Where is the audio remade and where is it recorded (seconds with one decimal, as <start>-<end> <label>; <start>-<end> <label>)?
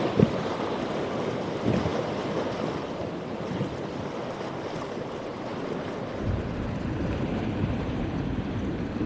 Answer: 0.0-9.1 remade